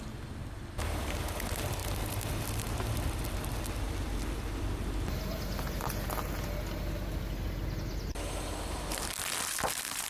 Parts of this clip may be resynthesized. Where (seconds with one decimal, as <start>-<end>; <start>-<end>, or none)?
none